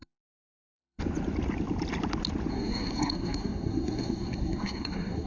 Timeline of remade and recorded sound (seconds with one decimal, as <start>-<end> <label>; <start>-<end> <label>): 0.0-1.0 remade; 1.0-2.5 recorded; 2.5-5.3 remade

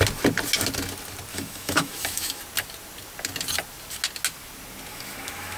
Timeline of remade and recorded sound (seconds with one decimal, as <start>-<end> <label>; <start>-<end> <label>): 0.0-1.3 recorded; 1.3-2.4 remade; 2.4-4.9 recorded; 4.9-5.6 remade